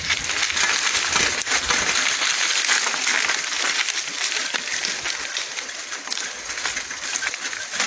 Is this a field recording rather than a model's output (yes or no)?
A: yes